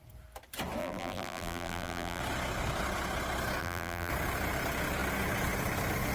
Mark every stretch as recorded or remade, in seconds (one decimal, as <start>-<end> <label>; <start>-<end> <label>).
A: 0.0-0.8 recorded; 0.8-2.2 remade; 2.2-3.6 recorded; 3.6-4.1 remade; 4.1-6.1 recorded